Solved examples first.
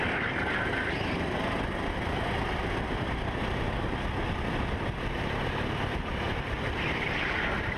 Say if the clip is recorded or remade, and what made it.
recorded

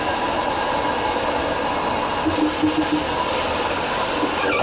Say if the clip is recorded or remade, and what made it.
recorded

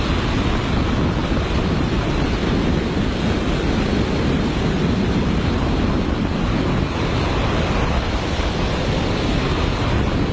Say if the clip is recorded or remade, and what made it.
recorded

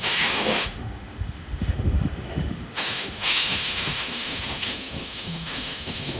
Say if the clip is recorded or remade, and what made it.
remade, autoencoder, DAC-VAE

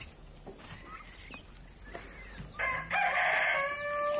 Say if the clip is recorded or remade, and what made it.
recorded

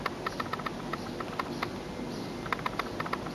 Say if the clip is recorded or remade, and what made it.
recorded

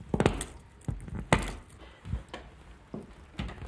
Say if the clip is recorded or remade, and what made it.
recorded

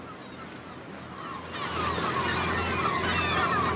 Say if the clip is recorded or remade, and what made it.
recorded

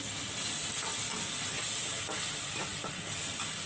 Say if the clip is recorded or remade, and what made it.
recorded